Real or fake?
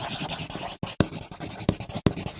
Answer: real